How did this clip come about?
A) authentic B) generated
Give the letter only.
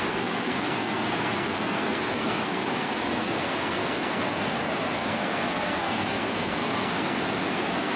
B